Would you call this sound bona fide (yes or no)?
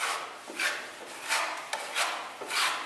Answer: yes